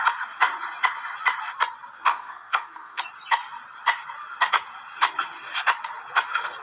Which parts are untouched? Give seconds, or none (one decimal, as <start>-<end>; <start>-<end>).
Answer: 0.0-2.1; 3.0-6.6